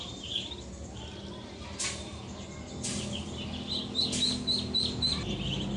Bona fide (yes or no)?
yes